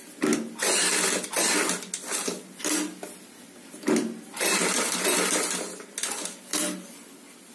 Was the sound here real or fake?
real